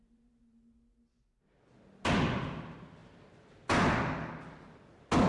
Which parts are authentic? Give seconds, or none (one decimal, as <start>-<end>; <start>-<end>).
0.0-5.3